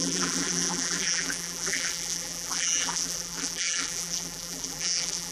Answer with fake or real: fake